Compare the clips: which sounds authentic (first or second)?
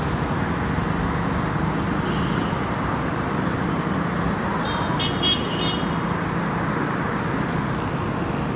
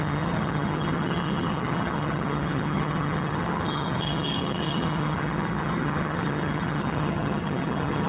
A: first